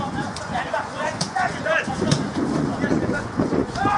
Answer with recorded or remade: remade